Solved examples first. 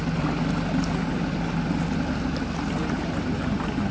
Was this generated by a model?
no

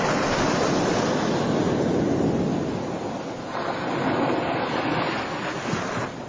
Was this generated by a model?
no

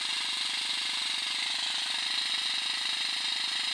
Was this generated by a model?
no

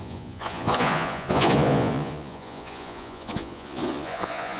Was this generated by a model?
yes